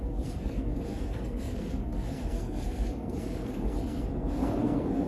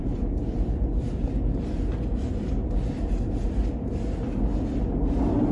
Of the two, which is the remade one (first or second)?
first